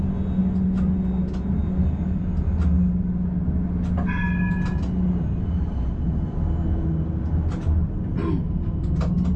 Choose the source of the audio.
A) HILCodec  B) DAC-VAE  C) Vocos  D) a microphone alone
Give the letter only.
D